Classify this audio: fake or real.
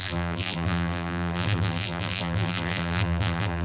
fake